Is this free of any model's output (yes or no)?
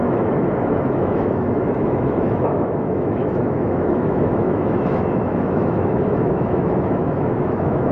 no